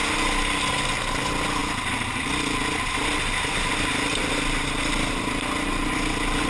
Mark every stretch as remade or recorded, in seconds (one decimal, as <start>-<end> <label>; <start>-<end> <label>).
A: 0.0-6.5 recorded